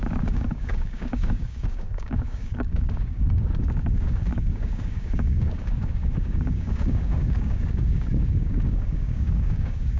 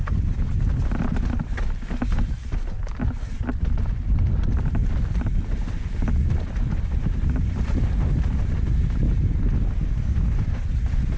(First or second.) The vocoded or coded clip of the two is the first